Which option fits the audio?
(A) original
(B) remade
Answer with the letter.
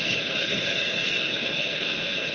B